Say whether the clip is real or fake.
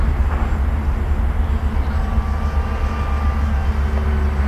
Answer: real